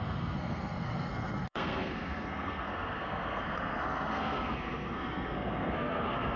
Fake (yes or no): yes